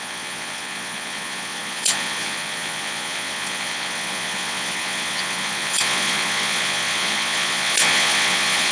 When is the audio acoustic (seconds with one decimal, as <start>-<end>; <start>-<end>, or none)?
none